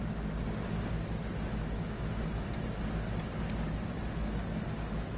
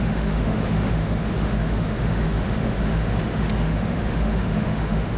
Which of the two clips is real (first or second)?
first